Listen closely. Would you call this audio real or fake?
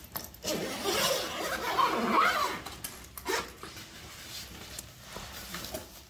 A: real